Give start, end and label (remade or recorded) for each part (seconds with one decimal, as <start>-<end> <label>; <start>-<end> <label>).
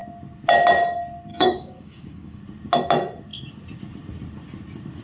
0.0-1.3 recorded; 1.3-2.4 remade; 2.4-5.0 recorded